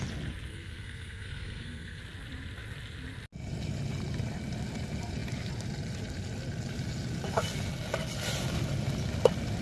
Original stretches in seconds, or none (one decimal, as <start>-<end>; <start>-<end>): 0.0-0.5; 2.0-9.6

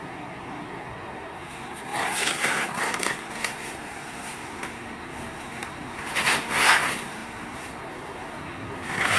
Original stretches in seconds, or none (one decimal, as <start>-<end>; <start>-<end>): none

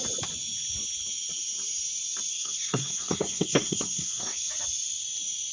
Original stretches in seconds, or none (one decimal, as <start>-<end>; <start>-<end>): 0.0-2.3; 4.5-5.5

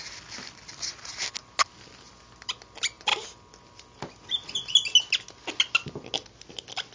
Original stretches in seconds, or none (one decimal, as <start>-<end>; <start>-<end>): 0.0-6.9

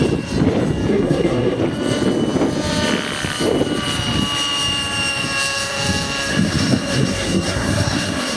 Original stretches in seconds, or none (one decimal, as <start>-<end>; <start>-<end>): 0.0-0.9; 1.6-6.3